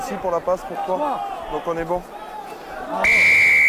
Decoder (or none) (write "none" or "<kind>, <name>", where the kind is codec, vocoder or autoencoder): none